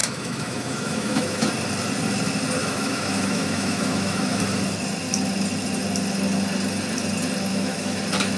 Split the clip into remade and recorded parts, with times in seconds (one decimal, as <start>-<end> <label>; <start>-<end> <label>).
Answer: 0.0-1.5 remade; 1.5-2.6 recorded; 2.6-4.4 remade; 4.4-7.5 recorded; 7.5-8.0 remade; 8.0-8.4 recorded